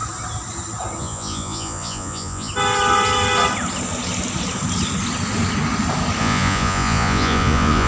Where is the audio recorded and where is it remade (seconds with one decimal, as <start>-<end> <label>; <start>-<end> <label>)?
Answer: 0.0-1.0 recorded; 1.0-2.5 remade; 2.5-6.2 recorded; 6.2-7.9 remade